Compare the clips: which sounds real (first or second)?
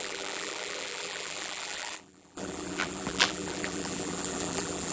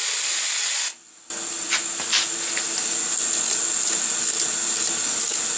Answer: second